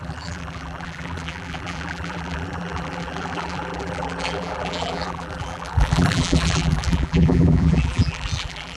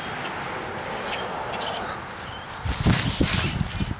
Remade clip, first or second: first